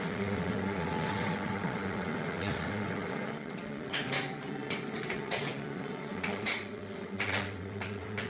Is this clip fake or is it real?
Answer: fake